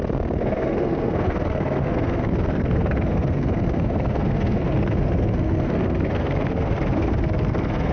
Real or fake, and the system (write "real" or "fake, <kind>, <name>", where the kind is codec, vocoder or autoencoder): fake, codec, SNAC